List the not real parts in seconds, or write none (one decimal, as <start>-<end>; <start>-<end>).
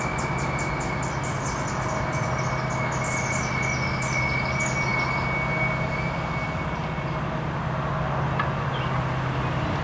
none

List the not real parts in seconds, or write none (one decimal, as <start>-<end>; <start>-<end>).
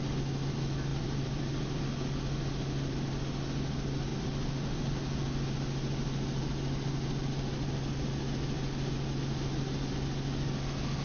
0.9-2.2; 4.1-4.9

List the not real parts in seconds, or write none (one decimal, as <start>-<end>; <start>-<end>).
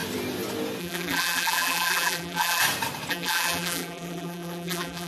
0.8-2.6; 3.1-5.1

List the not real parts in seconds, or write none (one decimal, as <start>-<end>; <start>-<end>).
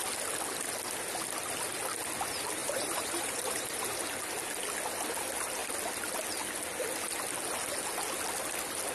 2.6-4.0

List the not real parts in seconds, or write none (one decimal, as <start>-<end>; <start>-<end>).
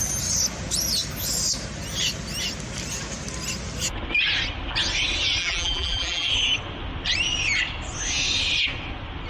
5.4-6.3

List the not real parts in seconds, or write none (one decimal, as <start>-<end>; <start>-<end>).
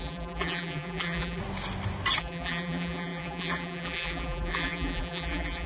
0.0-1.4; 2.2-5.7